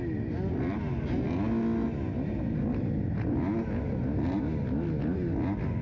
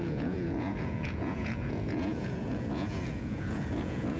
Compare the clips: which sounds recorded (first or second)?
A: first